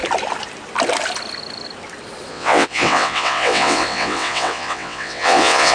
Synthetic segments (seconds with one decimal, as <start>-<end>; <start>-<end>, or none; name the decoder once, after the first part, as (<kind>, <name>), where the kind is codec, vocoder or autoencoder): 2.3-5.7 (vocoder, WaveNeXt)